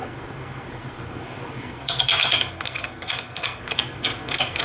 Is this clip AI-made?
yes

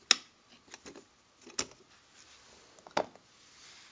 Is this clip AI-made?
no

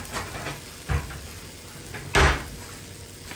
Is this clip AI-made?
no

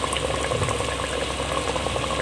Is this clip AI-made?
no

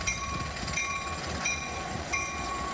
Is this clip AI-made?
yes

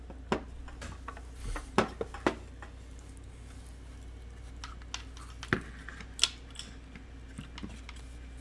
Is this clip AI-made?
no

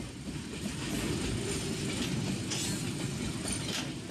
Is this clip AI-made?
no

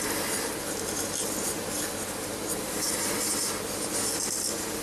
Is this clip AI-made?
no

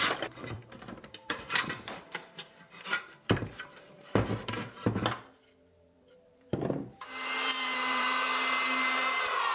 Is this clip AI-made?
yes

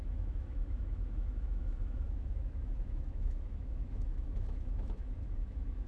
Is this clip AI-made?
yes